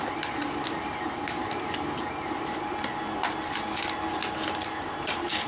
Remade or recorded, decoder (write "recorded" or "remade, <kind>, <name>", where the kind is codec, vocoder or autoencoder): recorded